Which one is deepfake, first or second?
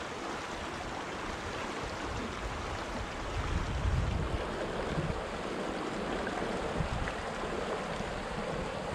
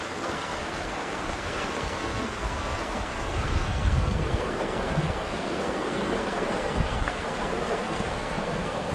second